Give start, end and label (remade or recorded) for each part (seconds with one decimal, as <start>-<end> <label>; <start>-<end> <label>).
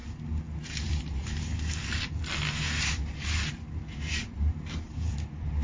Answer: 0.0-0.7 recorded; 0.7-2.2 remade; 2.2-2.9 recorded; 2.9-5.6 remade